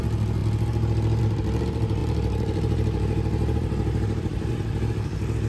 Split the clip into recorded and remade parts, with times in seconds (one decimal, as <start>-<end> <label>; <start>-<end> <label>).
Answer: 0.0-2.0 recorded; 2.0-4.5 remade; 4.5-5.5 recorded